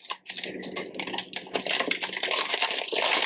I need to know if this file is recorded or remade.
recorded